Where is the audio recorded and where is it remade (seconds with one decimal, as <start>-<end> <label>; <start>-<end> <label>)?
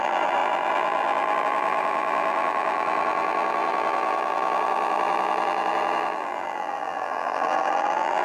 0.0-8.2 remade